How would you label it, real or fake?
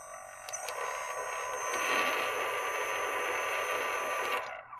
real